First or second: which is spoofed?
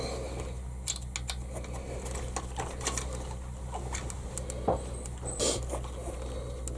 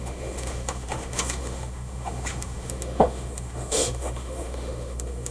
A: second